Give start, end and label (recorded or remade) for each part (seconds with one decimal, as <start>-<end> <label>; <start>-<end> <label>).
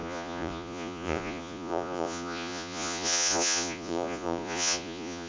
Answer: 0.0-5.3 remade